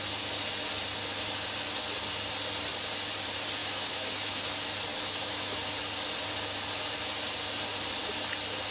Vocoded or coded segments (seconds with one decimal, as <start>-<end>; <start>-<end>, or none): 3.6-4.5; 4.9-5.8